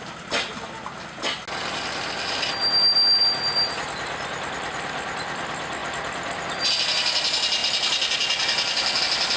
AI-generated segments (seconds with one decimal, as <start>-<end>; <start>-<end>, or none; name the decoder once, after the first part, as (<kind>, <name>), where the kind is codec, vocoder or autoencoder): none